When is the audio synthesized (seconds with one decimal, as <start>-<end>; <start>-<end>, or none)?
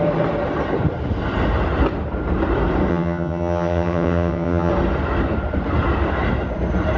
2.9-4.7